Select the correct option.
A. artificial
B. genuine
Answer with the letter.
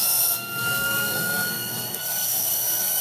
A